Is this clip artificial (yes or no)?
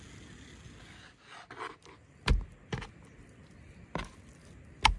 no